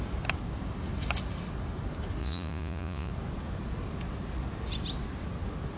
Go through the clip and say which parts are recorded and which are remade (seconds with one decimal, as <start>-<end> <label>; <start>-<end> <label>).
0.0-2.2 recorded; 2.2-3.1 remade; 3.1-5.8 recorded